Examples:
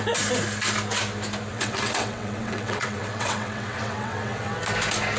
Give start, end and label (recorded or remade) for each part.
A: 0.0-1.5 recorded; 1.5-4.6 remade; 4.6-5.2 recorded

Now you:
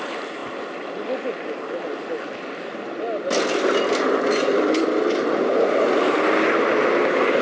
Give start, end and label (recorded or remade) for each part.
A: 0.0-7.4 recorded

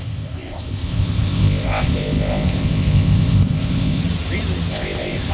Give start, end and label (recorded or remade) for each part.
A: 0.0-4.0 remade; 4.0-4.7 recorded; 4.7-5.3 remade

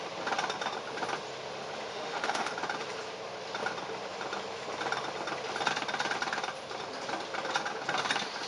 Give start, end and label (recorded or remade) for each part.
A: 0.0-1.9 recorded; 1.9-2.5 remade; 2.5-8.5 recorded

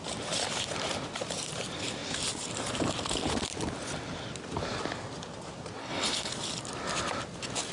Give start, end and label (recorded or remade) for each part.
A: 0.0-5.8 recorded; 5.8-6.3 remade; 6.3-7.7 recorded

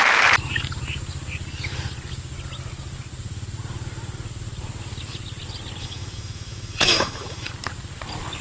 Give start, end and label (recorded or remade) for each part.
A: 0.0-5.8 recorded; 5.8-7.5 remade; 7.5-8.4 recorded

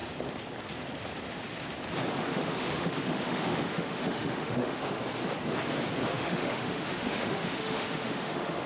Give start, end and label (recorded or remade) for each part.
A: 0.0-2.3 recorded; 2.3-5.0 remade; 5.0-6.0 recorded; 6.0-8.7 remade

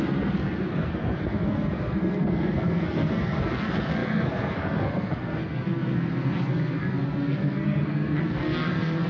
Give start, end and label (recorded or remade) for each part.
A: 0.0-9.1 remade